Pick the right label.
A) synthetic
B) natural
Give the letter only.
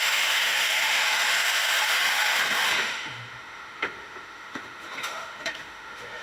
A